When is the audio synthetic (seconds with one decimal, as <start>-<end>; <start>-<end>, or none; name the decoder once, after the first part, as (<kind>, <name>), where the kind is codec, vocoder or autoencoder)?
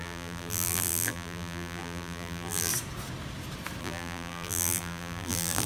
0.0-2.7 (vocoder, BigVGAN v2); 3.8-5.7